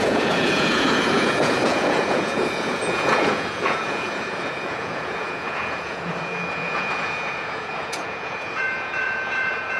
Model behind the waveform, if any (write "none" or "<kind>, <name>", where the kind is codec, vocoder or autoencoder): vocoder, Vocos